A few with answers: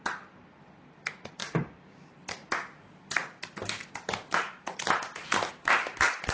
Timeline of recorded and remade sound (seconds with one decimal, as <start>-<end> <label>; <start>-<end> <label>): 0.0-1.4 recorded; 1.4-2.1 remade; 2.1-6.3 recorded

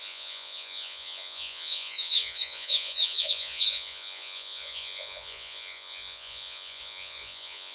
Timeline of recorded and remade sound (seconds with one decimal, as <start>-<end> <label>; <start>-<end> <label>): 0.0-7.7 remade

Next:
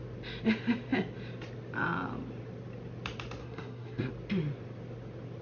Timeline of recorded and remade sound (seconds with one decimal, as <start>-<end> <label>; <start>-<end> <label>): 0.0-3.4 recorded; 3.4-4.1 remade; 4.1-5.4 recorded

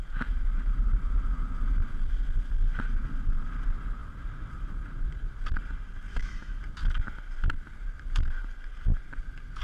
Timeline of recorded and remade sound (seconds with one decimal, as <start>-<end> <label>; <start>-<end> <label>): 0.0-6.1 recorded; 6.1-6.6 remade; 6.6-9.6 recorded